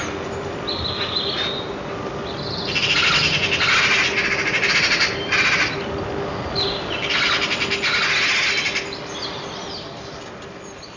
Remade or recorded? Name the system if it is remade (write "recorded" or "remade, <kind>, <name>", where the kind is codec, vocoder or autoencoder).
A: recorded